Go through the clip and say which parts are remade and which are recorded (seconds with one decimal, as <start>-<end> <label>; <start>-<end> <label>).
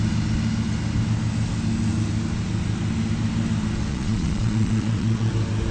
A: 0.0-3.9 recorded; 3.9-5.3 remade; 5.3-5.7 recorded